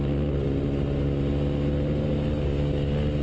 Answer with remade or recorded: recorded